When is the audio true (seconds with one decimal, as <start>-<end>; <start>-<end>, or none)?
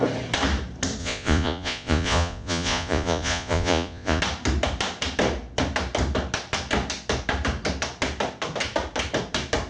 0.0-1.0; 4.2-9.7